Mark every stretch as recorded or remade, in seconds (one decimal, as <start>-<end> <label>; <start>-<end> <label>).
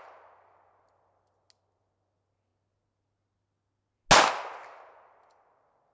0.0-5.9 recorded